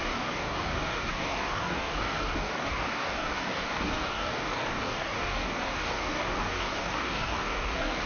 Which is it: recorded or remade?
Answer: remade